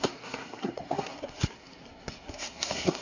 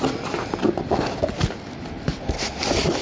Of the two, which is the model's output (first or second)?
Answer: first